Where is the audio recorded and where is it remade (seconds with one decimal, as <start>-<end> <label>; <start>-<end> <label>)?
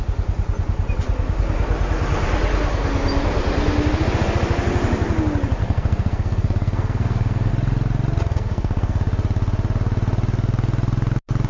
0.0-5.6 recorded; 5.6-7.5 remade; 7.5-8.3 recorded; 8.3-9.0 remade; 9.0-11.5 recorded